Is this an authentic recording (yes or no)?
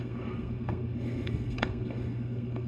no